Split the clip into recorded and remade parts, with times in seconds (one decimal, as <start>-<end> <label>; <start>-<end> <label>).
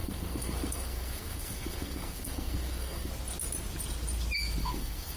0.0-3.1 remade; 3.1-4.6 recorded; 4.6-5.2 remade